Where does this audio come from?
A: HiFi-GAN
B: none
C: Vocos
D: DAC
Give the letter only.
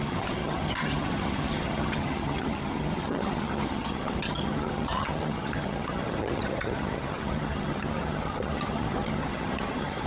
A